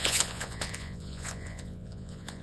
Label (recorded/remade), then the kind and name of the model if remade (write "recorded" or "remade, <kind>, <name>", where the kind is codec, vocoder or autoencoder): remade, vocoder, Vocos